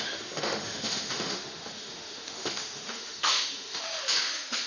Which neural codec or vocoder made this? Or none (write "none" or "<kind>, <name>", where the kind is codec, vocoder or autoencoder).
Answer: autoencoder, DAC-VAE